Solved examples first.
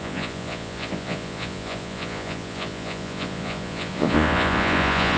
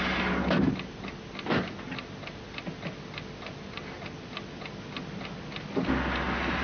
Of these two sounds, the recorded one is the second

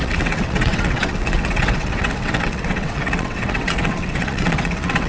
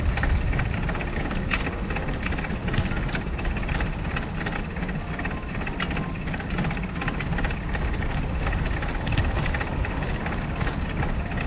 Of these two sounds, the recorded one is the second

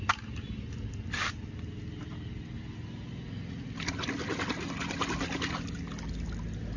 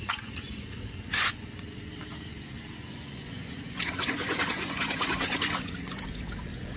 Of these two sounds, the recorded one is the first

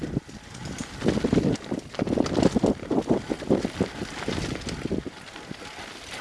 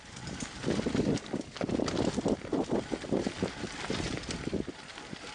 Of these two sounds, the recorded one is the first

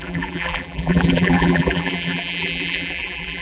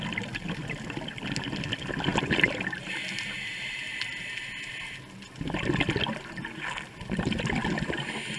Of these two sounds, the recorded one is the second